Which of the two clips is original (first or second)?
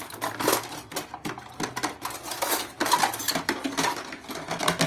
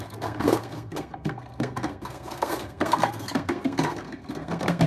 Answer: first